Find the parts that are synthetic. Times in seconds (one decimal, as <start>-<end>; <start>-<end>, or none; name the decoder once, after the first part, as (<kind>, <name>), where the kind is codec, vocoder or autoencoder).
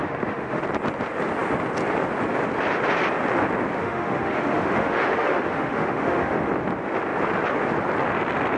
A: 0.0-0.6 (autoencoder, DAC-VAE); 3.8-6.5